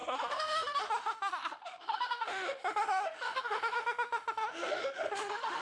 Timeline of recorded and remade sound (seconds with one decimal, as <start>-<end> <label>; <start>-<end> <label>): 0.0-5.6 remade